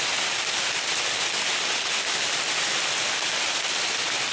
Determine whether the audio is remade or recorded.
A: recorded